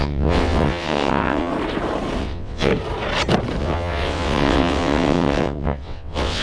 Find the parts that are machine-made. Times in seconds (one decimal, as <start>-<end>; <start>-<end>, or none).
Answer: 0.0-1.5; 2.2-2.7; 3.6-6.4